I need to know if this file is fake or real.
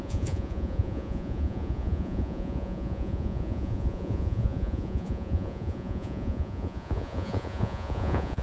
fake